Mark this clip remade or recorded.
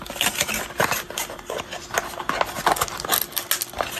recorded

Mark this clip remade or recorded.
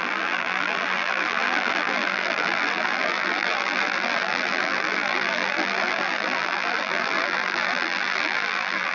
remade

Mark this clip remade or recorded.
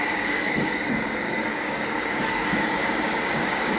remade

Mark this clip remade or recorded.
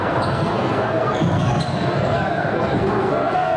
remade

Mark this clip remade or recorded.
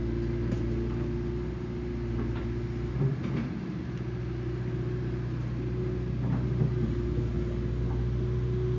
recorded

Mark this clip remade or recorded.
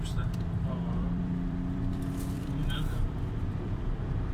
remade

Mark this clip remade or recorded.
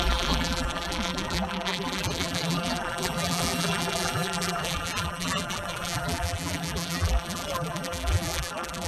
remade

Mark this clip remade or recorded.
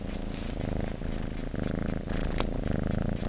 recorded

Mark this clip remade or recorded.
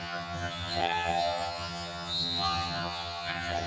remade